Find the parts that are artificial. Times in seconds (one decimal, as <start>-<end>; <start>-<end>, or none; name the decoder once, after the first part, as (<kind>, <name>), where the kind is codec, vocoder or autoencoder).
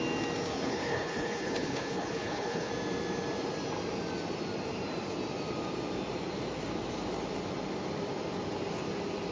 0.5-2.7 (codec, HILCodec)